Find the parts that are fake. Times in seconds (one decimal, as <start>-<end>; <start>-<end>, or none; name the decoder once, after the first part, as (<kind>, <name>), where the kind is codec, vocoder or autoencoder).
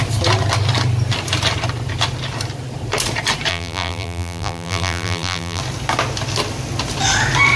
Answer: 3.5-5.6 (vocoder, BigVGAN v2)